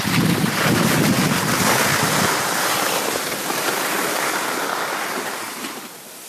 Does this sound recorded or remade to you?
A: recorded